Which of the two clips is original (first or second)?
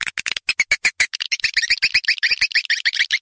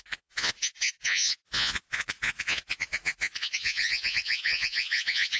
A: first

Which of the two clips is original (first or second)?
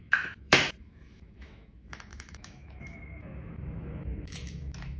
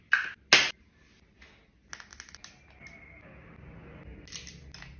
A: second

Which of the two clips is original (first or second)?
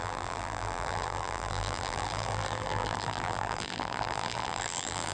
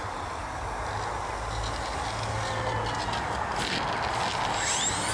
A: second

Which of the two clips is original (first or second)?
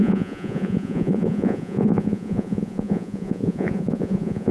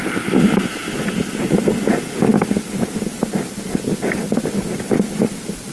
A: second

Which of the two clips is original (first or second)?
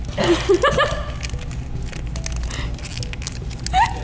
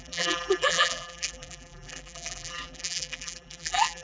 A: first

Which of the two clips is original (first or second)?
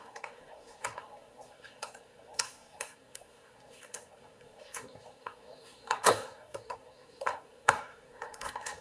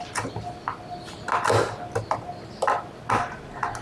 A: second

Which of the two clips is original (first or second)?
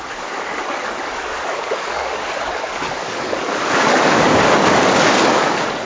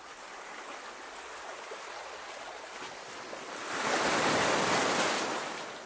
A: second